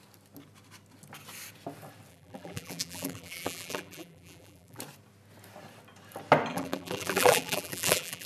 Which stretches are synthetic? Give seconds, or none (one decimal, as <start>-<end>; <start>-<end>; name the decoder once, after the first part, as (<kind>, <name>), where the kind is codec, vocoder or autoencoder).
2.1-4.8 (vocoder, BigVGAN v2); 6.5-8.3

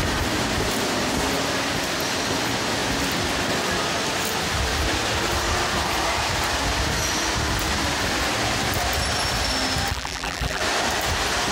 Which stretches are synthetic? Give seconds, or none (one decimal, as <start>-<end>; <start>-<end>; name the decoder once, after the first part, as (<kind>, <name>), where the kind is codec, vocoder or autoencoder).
9.9-10.6 (vocoder, BigVGAN v2)

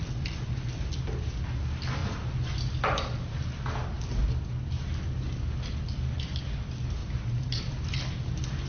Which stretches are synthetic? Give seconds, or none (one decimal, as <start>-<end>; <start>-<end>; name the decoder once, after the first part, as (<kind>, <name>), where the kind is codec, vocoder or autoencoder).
7.0-7.7 (vocoder, BigVGAN v2)

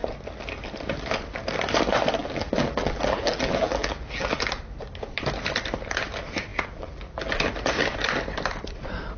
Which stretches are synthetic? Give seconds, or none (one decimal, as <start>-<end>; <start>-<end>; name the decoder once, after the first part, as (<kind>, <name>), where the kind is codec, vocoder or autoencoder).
2.2-4.6 (vocoder, BigVGAN v2); 6.5-7.5

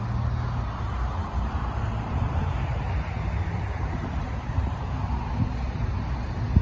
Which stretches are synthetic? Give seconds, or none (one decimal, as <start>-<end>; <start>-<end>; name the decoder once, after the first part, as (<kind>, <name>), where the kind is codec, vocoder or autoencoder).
1.2-4.8 (vocoder, BigVGAN v2)